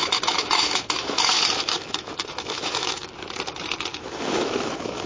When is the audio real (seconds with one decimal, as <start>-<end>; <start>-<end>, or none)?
3.1-3.9